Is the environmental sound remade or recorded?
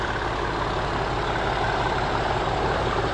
recorded